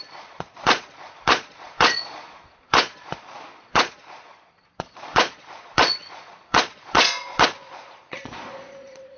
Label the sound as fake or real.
fake